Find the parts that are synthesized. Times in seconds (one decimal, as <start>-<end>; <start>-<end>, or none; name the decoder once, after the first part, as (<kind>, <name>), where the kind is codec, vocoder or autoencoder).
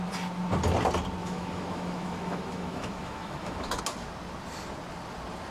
1.2-3.8 (autoencoder, DAC-VAE)